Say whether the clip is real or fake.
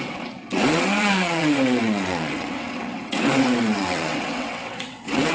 fake